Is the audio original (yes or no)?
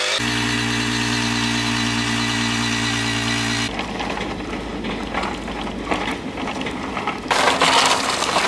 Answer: yes